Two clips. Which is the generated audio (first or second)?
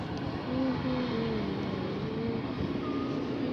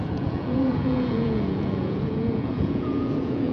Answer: second